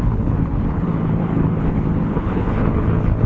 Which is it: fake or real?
fake